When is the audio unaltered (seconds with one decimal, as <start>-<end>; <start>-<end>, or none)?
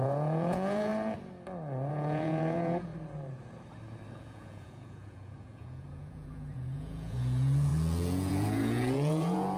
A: 0.9-1.9; 2.9-4.1